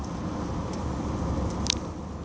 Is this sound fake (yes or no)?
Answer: no